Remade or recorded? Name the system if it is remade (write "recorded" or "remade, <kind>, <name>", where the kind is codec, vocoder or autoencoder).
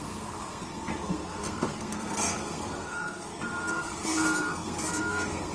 remade, codec, SNAC